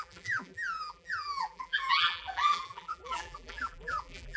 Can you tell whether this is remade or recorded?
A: remade